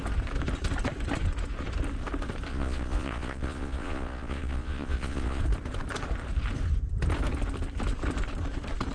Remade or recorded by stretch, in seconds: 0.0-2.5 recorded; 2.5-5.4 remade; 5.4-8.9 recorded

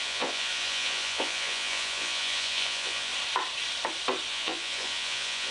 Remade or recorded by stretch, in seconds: 0.0-3.1 remade; 3.1-4.3 recorded; 4.3-5.5 remade